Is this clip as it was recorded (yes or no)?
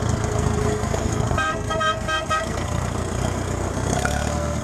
no